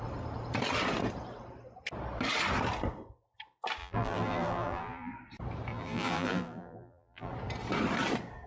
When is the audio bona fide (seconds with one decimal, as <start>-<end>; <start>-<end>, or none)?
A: 0.0-3.8; 5.1-5.7; 7.3-8.5